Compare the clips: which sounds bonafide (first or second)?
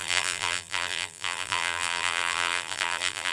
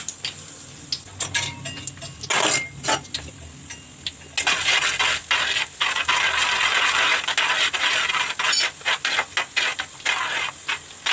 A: second